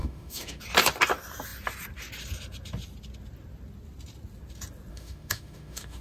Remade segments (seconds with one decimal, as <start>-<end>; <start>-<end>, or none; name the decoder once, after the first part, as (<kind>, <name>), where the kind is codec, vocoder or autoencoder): 0.0-0.6 (autoencoder, DAC-VAE); 4.9-6.0